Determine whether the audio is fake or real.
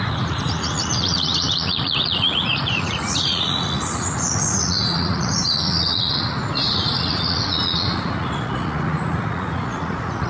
fake